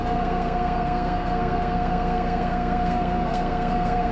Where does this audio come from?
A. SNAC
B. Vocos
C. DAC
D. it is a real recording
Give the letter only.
A